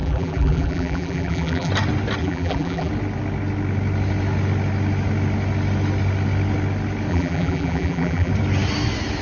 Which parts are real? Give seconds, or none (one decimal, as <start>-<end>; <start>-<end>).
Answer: 1.7-2.2; 2.9-7.1; 8.3-9.2